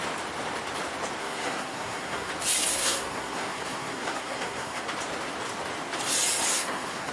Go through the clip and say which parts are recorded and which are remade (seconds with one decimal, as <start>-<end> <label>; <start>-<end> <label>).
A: 0.0-1.2 recorded; 1.2-2.3 remade; 2.3-2.7 recorded; 2.7-4.8 remade; 4.8-6.5 recorded; 6.5-7.1 remade